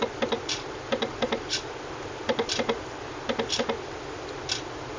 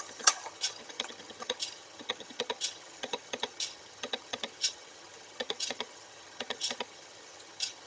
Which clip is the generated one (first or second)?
second